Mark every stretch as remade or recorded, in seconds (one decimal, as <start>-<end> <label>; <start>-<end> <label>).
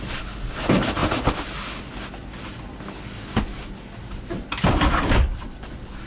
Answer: 0.0-6.1 recorded